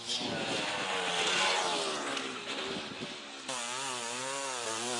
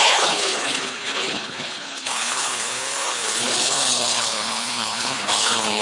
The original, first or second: first